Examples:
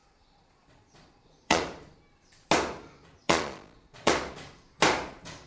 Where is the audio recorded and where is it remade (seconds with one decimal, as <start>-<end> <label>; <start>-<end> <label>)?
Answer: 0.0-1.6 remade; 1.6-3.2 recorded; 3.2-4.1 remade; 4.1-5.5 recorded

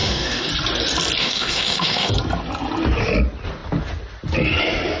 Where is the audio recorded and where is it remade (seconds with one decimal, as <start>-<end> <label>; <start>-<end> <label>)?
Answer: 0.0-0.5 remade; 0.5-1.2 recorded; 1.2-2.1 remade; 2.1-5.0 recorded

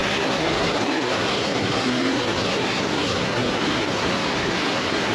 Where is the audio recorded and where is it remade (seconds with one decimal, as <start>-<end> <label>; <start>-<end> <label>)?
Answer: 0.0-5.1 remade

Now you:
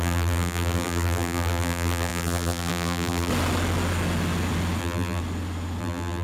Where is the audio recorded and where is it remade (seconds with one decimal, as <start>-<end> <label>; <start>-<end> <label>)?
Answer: 0.0-3.3 remade; 3.3-4.8 recorded; 4.8-5.2 remade; 5.2-5.8 recorded; 5.8-6.2 remade